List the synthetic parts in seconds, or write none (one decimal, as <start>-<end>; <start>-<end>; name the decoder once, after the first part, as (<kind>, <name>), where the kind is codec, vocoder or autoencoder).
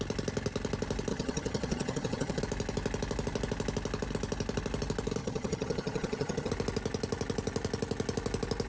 1.1-2.4 (vocoder, HiFi-GAN); 5.2-6.5